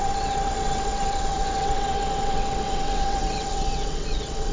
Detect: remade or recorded remade